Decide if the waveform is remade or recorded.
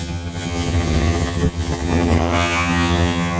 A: remade